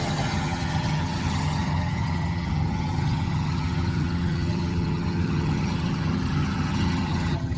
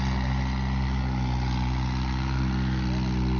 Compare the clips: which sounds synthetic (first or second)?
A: first